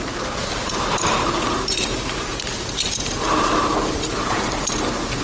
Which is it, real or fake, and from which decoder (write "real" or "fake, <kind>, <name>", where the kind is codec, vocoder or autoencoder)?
fake, vocoder, BigVGAN v2